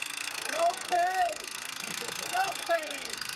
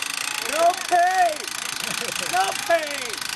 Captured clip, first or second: second